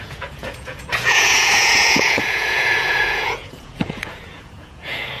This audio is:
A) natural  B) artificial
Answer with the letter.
B